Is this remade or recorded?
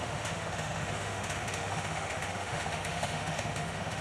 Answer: remade